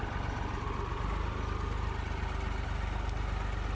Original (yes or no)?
yes